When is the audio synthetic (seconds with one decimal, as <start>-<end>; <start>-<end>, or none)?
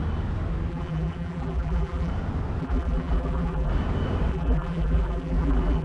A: 0.7-2.1; 2.6-3.7; 4.3-5.8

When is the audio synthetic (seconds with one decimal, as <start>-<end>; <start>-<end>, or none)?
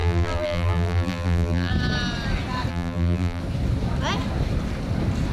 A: 0.0-1.7; 2.7-3.4